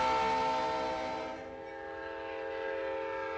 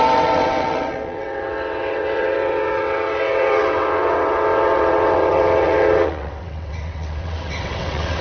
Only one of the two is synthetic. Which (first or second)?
second